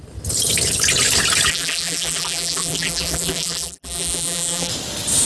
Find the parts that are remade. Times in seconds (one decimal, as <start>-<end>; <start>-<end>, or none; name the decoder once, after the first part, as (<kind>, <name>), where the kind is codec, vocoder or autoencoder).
1.5-4.7 (vocoder, BigVGAN v2)